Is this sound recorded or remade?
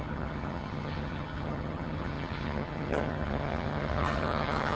remade